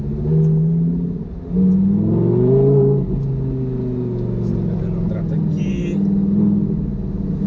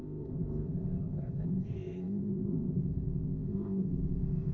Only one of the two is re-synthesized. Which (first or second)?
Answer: second